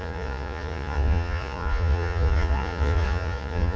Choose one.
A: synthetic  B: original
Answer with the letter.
A